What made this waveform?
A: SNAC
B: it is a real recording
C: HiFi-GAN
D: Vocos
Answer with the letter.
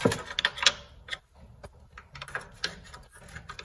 B